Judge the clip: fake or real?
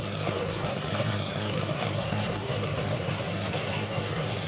fake